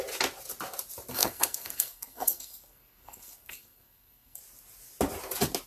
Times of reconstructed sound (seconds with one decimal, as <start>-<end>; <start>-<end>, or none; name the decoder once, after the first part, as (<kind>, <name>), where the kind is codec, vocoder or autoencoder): 1.1-4.4 (codec, SNAC)